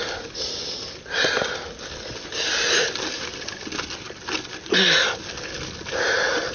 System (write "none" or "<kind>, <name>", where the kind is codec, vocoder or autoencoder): none